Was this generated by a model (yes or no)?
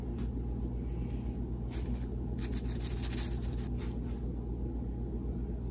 no